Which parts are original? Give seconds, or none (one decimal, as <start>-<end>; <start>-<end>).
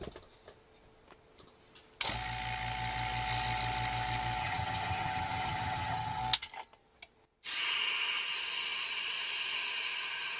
0.0-4.4; 6.2-10.4